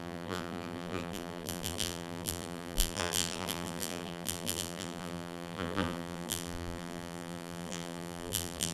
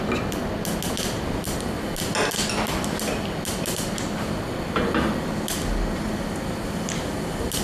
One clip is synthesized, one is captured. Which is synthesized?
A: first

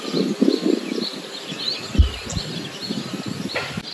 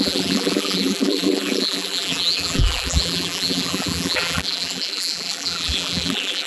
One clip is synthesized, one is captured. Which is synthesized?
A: second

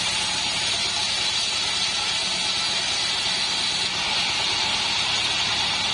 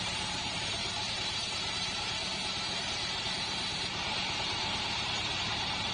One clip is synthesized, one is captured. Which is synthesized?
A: second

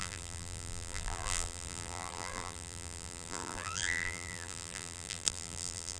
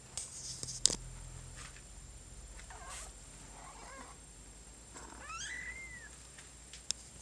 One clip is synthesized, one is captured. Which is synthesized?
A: first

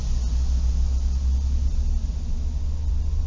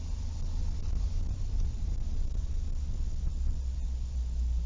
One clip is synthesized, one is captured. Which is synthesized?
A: second